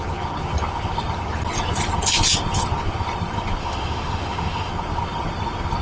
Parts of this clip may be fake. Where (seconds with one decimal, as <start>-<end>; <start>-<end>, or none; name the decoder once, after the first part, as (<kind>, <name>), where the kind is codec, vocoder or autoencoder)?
3.6-4.7 (autoencoder, DAC-VAE)